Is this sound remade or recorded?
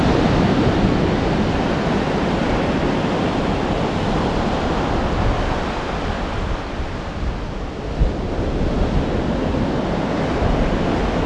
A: recorded